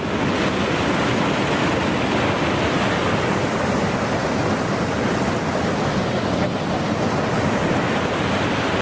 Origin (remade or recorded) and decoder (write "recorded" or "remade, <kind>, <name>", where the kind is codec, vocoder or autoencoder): recorded